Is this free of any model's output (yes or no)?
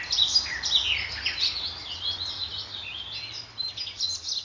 yes